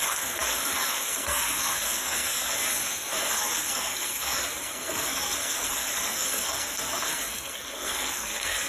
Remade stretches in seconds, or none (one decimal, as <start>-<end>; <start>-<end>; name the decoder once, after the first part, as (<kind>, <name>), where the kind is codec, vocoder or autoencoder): 0.0-8.7 (codec, SNAC)

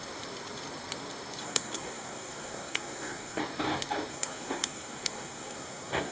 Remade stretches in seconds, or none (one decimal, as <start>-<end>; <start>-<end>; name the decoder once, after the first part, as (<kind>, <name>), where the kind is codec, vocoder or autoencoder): 1.4-3.4 (codec, SNAC); 4.1-6.1

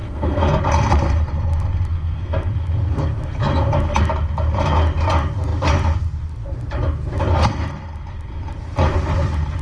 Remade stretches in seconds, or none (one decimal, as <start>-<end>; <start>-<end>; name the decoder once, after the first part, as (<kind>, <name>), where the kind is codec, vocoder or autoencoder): 0.0-0.6 (codec, SNAC); 1.9-2.5

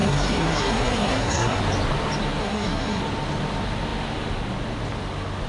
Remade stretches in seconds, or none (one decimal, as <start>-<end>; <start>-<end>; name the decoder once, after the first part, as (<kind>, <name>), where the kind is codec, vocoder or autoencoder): 0.0-1.6 (codec, SNAC); 2.4-3.0

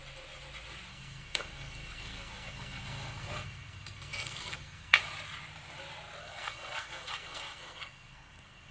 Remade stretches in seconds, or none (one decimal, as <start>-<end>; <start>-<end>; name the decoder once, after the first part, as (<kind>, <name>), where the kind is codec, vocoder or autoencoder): 0.9-5.0 (codec, SNAC); 6.2-8.7

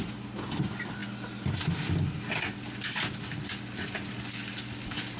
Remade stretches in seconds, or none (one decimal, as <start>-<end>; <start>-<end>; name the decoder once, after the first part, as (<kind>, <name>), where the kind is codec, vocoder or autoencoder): none